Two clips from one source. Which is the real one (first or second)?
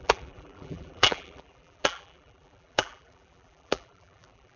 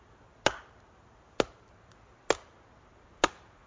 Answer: second